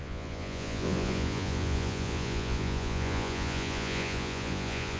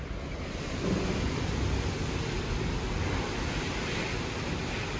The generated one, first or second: first